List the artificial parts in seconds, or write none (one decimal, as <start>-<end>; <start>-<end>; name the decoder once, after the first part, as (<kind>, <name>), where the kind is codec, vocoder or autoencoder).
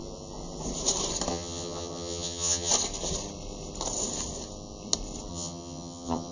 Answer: 1.3-2.7 (vocoder, HiFi-GAN); 5.3-6.3